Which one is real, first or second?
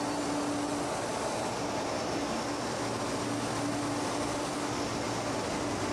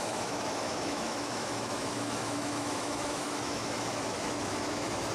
first